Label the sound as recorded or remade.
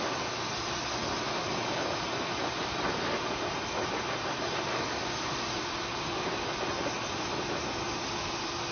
recorded